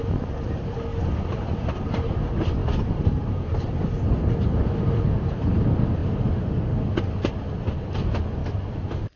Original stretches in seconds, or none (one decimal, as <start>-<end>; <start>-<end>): 0.0-9.2